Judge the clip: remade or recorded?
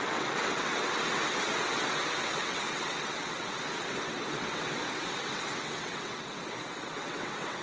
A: remade